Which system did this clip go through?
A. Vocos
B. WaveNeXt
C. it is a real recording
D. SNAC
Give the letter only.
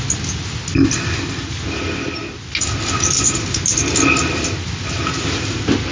C